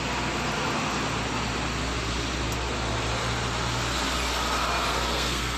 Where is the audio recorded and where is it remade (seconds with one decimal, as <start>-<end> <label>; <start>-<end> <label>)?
0.0-4.9 recorded; 4.9-5.6 remade